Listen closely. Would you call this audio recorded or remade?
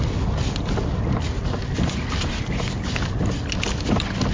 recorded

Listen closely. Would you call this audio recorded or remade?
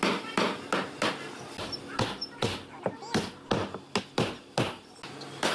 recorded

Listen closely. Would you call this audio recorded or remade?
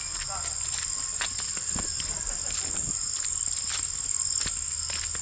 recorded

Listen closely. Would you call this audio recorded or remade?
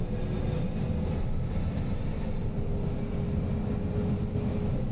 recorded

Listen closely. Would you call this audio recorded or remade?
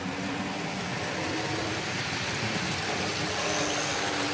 recorded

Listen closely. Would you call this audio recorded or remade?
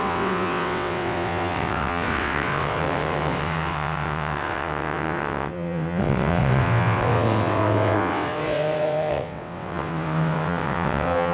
remade